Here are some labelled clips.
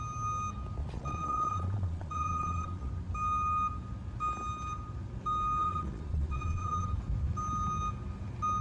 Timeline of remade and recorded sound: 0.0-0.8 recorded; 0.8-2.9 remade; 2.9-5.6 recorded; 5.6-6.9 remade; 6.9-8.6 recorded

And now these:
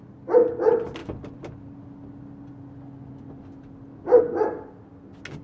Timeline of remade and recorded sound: 0.0-5.4 recorded